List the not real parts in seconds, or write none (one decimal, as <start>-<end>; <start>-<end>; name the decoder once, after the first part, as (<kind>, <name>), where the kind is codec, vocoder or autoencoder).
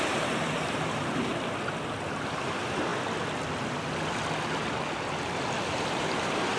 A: 0.0-1.3 (vocoder, BigVGAN v2); 2.5-2.9; 5.9-6.6